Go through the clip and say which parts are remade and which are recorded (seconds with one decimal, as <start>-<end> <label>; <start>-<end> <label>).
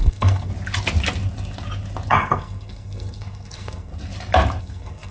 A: 0.0-0.5 remade; 0.5-2.1 recorded; 2.1-3.9 remade; 3.9-4.6 recorded; 4.6-5.1 remade